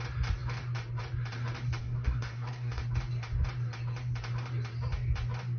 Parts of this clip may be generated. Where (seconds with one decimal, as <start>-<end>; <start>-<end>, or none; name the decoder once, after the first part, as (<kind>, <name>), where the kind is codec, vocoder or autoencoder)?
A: 1.8-2.8 (codec, SNAC)